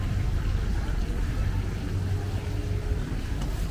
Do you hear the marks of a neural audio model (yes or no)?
no